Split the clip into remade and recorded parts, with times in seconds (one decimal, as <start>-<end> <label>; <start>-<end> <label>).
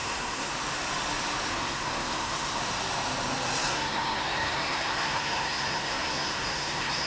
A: 0.0-0.5 remade; 0.5-1.5 recorded; 1.5-2.6 remade; 2.6-3.6 recorded; 3.6-7.1 remade